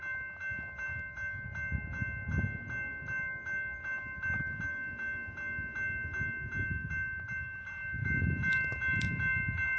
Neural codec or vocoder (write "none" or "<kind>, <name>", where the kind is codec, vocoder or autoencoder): none